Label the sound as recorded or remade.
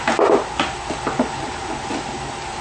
recorded